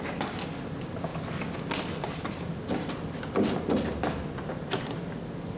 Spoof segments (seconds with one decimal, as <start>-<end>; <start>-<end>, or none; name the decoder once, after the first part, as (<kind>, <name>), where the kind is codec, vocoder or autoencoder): none